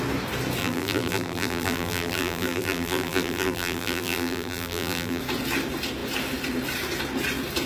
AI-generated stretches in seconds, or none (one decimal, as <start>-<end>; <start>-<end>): 0.6-5.2